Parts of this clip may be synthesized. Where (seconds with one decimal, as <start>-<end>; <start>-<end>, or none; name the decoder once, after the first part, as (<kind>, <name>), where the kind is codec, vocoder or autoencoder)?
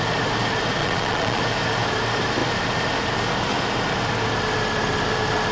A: 0.8-1.4 (vocoder, Vocos)